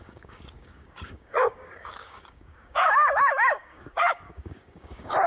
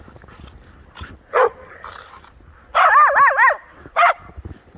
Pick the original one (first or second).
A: second